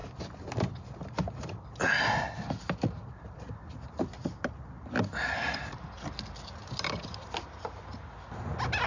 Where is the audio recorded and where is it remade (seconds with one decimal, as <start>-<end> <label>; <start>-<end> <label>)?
0.0-8.9 recorded

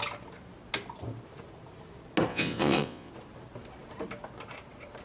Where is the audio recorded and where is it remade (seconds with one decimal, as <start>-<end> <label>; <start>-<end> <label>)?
0.0-2.3 recorded; 2.3-3.1 remade; 3.1-5.0 recorded

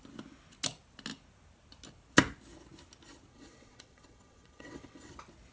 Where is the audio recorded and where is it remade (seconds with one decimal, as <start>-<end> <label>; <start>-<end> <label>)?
0.0-3.3 recorded; 3.3-5.1 remade; 5.1-5.5 recorded

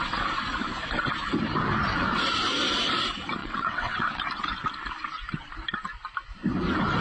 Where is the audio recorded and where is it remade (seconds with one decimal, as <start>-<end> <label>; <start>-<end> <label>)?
0.0-3.4 recorded; 3.4-4.2 remade; 4.2-7.0 recorded

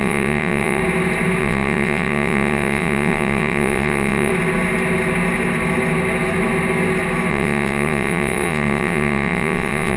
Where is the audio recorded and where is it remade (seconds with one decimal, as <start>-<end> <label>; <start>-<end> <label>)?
0.0-0.8 remade; 0.8-1.4 recorded; 1.4-4.3 remade; 4.3-7.3 recorded; 7.3-10.0 remade

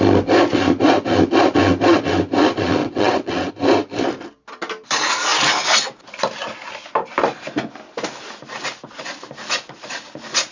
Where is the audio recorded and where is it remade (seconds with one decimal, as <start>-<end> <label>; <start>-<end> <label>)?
0.0-2.8 recorded; 2.8-3.5 remade; 3.5-10.5 recorded

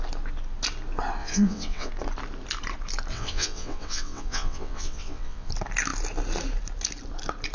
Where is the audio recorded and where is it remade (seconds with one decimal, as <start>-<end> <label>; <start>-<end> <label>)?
0.0-1.2 recorded; 1.2-1.9 remade; 1.9-3.1 recorded; 3.1-5.5 remade; 5.5-7.5 recorded

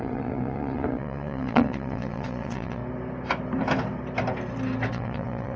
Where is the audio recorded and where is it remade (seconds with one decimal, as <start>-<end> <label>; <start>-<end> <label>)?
0.0-2.8 remade; 2.8-4.9 recorded; 4.9-5.6 remade